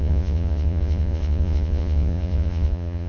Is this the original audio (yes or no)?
no